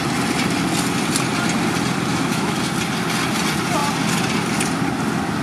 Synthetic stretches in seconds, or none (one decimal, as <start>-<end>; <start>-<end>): 2.1-2.6